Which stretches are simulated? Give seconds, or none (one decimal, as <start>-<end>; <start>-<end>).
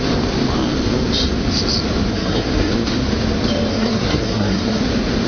2.1-2.7; 3.7-4.8